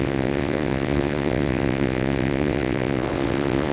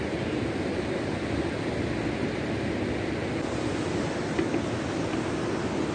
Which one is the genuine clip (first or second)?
second